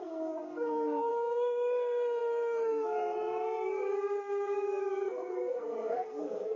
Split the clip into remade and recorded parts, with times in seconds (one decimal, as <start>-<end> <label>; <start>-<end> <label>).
0.0-6.6 remade